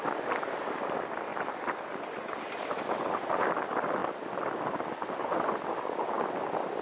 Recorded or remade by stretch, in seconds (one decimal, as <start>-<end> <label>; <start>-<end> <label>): 0.0-6.8 recorded